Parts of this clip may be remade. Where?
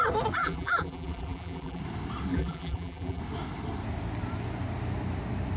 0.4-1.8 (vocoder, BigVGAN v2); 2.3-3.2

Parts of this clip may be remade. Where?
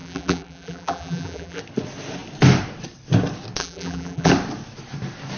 0.0-1.6 (vocoder, BigVGAN v2); 3.6-4.3